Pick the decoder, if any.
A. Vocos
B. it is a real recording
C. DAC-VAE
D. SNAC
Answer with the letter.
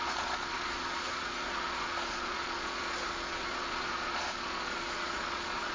A